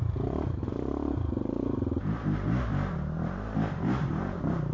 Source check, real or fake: fake